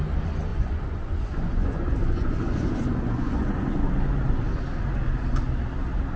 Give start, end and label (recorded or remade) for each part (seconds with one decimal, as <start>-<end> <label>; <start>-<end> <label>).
0.0-0.5 recorded; 0.5-3.9 remade; 3.9-6.2 recorded